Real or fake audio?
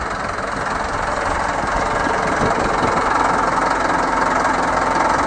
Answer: real